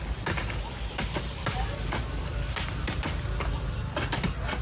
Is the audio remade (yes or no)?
no